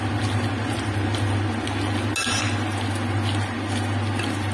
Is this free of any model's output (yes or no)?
yes